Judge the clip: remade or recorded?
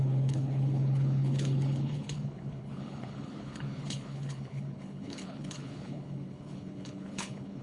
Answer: remade